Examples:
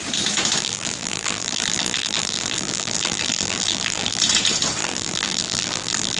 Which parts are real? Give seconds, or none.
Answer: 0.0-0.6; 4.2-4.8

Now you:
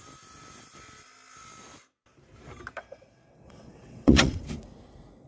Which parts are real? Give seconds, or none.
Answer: 0.0-2.8; 4.4-5.3

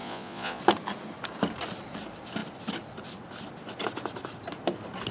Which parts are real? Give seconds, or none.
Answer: 0.6-5.1